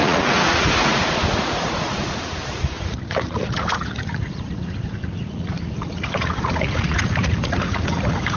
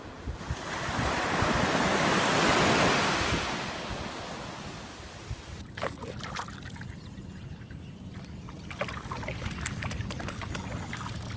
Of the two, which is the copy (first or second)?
first